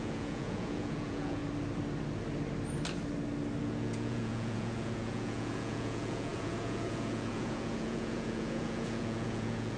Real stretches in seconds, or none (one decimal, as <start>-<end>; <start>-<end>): 1.4-3.6